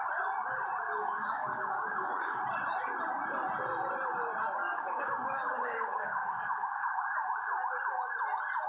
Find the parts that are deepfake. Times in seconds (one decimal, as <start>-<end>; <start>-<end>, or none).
1.0-2.4; 4.6-7.0